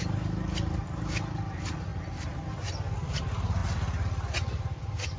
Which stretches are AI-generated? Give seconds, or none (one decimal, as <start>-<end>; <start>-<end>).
none